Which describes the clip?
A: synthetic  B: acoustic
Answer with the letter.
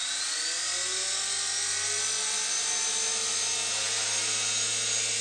B